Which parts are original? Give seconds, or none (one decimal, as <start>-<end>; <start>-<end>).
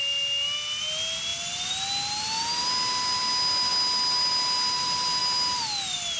0.0-6.2